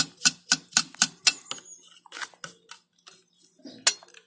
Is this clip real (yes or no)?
yes